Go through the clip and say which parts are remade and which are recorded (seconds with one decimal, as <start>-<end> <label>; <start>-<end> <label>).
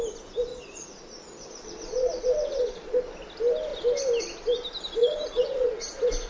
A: 0.0-0.5 recorded; 0.5-3.0 remade; 3.0-5.0 recorded; 5.0-5.7 remade; 5.7-6.3 recorded